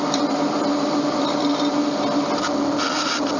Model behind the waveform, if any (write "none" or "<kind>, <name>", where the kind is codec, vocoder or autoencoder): none